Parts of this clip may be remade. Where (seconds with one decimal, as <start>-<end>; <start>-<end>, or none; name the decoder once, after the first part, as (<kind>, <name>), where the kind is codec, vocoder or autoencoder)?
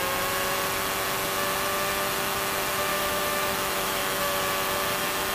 2.9-4.2 (autoencoder, DAC-VAE)